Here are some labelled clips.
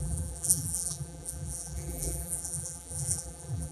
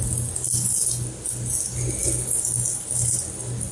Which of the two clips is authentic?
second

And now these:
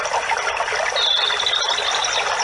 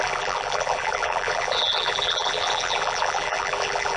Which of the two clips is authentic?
first